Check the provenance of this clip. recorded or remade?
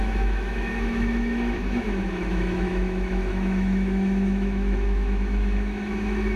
remade